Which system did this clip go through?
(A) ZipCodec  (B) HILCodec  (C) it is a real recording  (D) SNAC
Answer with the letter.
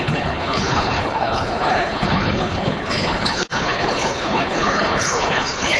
B